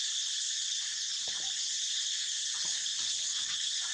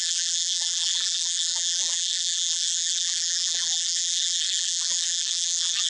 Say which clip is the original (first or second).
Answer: first